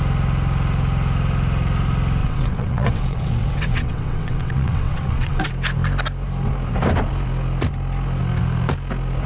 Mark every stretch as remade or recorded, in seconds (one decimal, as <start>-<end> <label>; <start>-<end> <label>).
0.0-2.2 recorded; 2.2-5.5 remade; 5.5-9.3 recorded